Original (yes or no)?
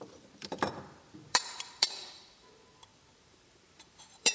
no